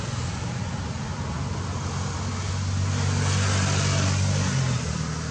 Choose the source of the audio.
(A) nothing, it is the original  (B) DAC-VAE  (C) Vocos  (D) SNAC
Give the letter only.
A